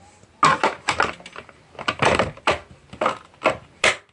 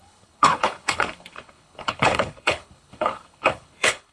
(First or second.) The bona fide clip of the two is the first